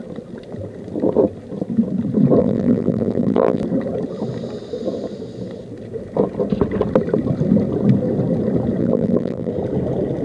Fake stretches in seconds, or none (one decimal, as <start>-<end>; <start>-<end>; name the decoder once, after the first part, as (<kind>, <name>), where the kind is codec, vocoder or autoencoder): 2.4-3.6 (vocoder, BigVGAN v2); 8.8-9.5